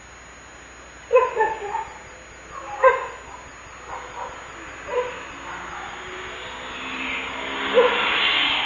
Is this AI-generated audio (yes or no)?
no